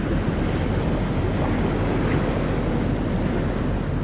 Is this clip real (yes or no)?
yes